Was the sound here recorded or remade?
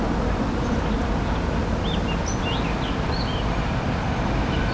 recorded